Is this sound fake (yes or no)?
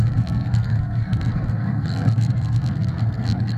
yes